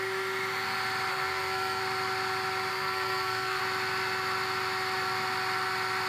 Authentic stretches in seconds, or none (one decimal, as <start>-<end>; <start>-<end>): 0.0-1.1; 1.8-2.7; 3.6-6.1